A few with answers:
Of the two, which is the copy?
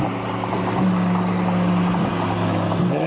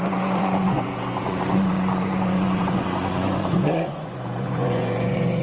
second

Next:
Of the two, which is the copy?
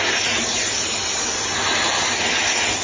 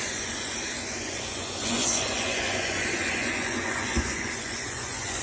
second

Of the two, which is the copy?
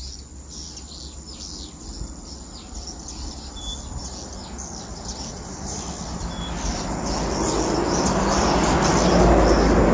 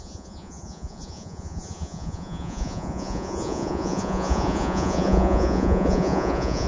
second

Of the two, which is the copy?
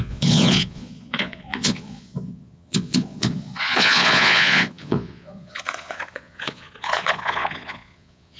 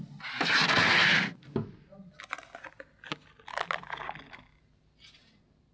first